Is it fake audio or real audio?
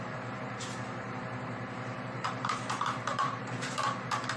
fake